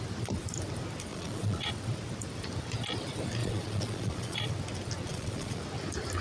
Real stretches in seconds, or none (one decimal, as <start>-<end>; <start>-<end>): 0.0-1.1; 1.7-3.4; 4.5-5.1; 5.6-6.2